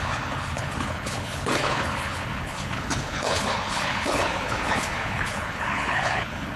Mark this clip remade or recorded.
remade